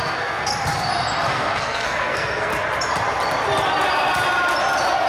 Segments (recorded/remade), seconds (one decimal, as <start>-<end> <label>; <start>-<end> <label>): 0.0-0.5 remade; 0.5-1.3 recorded; 1.3-2.5 remade; 2.5-5.1 recorded